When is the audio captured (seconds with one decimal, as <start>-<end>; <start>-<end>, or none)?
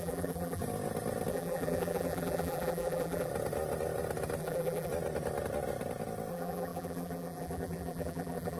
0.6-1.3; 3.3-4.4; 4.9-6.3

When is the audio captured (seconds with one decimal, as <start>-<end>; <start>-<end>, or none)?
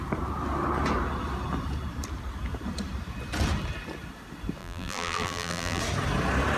0.0-4.6; 5.8-6.6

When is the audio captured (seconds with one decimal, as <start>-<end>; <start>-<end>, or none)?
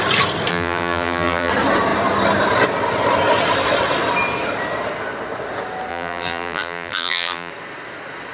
0.0-0.5; 1.5-5.9; 7.5-8.3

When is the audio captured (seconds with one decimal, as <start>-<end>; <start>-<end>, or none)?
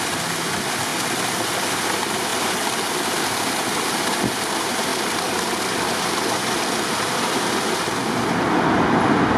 0.0-9.4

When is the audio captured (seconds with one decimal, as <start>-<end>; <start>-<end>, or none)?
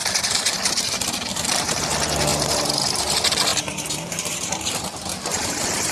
0.0-1.3; 1.8-2.3; 3.0-3.5